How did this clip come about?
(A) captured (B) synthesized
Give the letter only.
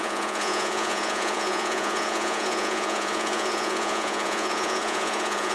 B